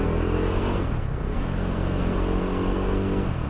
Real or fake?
fake